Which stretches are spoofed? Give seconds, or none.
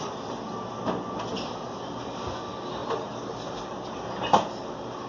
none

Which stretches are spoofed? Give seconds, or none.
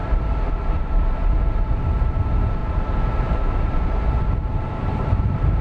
0.0-1.0 (vocoder, BigVGAN v2); 2.6-5.6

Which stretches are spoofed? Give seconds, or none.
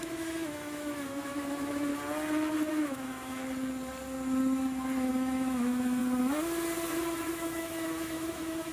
0.0-1.9 (autoencoder, DAC-VAE); 2.7-3.4; 5.1-6.0; 7.2-8.7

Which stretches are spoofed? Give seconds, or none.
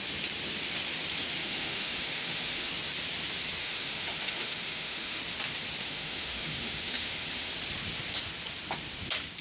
1.4-2.7 (autoencoder, DAC-VAE); 3.6-5.2; 5.8-7.5